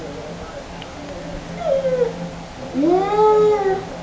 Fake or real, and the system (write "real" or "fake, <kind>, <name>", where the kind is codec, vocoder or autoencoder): real